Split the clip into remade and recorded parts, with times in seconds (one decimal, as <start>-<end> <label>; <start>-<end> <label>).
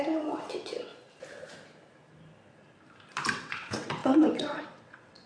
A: 0.0-0.9 remade; 0.9-3.3 recorded; 3.3-5.3 remade